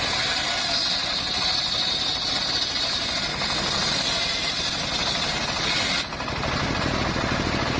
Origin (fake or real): real